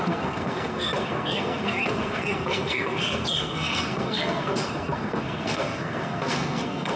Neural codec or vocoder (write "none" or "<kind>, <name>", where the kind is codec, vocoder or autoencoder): codec, SNAC